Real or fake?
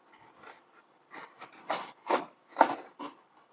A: real